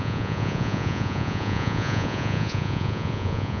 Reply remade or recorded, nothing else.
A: remade